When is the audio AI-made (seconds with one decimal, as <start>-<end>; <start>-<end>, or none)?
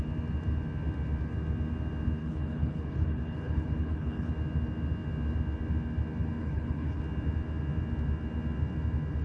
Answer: 2.2-4.3; 6.4-7.0